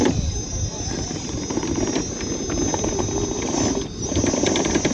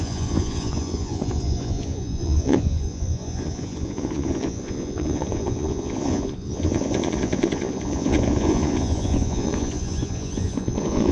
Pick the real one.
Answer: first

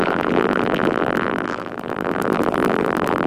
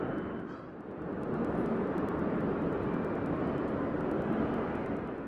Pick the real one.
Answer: second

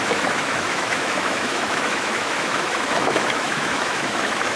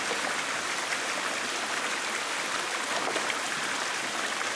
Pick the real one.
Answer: second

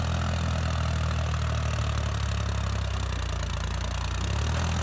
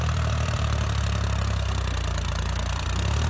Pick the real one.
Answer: first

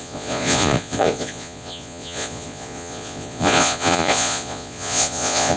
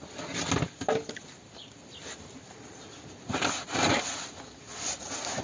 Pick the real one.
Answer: second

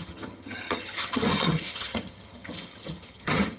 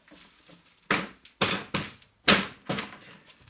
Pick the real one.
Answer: second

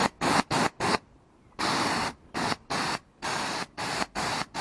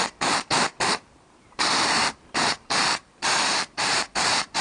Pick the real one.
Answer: first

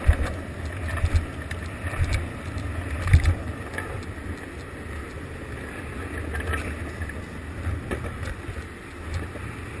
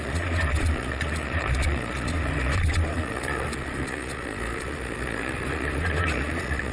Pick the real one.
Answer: first